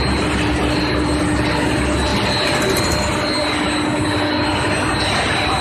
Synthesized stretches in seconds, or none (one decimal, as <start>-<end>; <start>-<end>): none